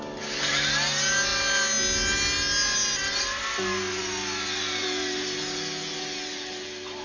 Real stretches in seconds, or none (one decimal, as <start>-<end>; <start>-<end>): 0.0-7.0